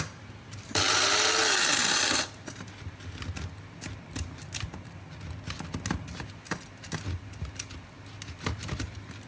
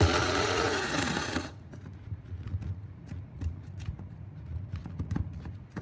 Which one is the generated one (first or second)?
second